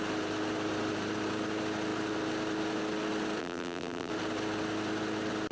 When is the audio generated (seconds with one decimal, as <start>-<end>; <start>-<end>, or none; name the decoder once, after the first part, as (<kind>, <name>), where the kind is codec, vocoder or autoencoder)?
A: 3.4-4.1 (vocoder, BigVGAN v2)